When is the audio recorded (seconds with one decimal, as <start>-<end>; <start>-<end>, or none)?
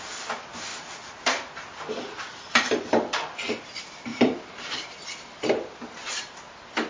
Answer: none